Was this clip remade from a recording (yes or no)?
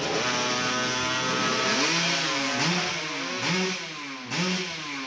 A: no